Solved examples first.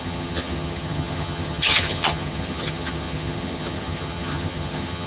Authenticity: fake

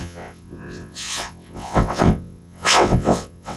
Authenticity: fake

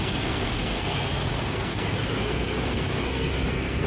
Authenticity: fake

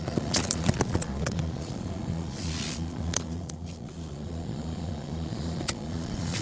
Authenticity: fake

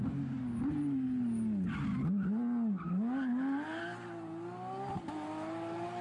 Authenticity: real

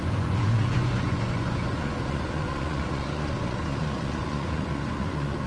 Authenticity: fake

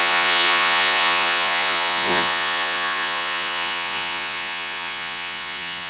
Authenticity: fake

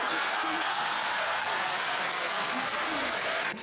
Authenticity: fake